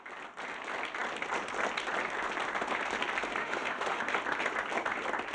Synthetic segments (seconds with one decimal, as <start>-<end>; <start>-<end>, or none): 3.4-4.1